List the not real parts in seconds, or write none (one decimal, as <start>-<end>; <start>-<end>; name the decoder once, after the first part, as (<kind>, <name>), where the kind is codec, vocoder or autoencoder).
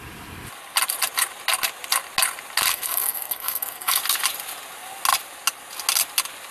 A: 2.7-4.0 (codec, SNAC)